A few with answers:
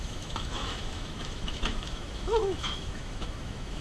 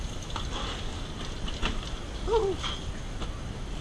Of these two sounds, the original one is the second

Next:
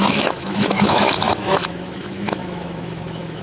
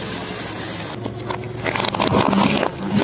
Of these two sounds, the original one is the second